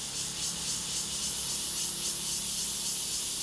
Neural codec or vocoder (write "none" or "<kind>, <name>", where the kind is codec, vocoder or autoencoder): none